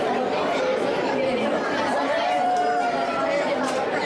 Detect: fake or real fake